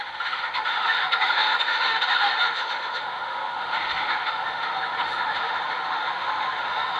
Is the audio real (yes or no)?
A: no